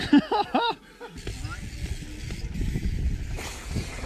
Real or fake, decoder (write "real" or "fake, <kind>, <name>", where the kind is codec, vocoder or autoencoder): real